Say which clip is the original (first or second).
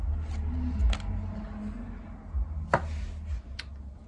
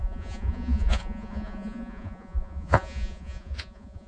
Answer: first